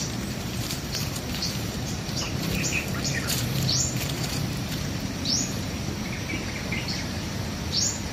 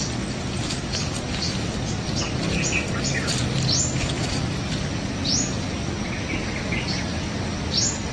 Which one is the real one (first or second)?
second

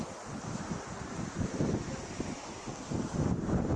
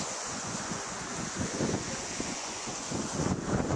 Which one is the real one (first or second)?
first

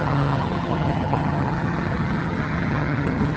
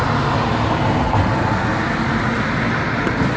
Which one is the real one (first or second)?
second